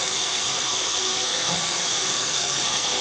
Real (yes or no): no